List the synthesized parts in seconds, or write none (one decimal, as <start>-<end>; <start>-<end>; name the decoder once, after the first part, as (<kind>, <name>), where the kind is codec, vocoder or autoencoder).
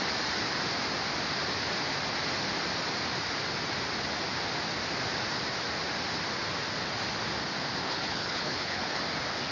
7.8-9.0 (codec, HILCodec)